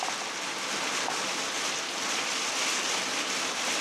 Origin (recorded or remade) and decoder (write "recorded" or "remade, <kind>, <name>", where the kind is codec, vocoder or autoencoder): recorded